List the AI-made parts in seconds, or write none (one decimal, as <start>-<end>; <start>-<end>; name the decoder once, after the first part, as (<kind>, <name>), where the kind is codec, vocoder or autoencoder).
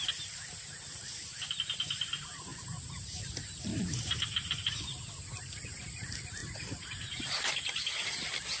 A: 3.7-5.0 (vocoder, BigVGAN v2); 6.4-7.5